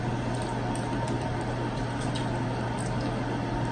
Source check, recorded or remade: recorded